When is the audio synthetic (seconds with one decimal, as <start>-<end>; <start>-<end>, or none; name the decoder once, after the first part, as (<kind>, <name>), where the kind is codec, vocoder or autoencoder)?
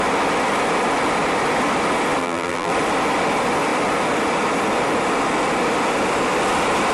2.2-2.7 (vocoder, BigVGAN v2)